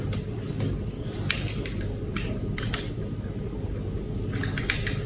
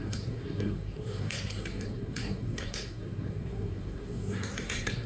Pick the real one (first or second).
first